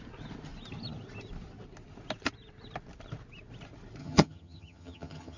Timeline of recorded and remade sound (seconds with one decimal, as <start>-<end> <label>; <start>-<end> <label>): 0.0-4.0 recorded; 4.0-5.4 remade